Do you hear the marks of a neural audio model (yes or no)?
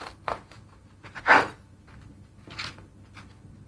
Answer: no